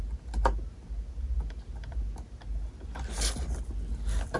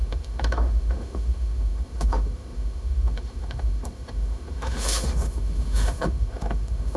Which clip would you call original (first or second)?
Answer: first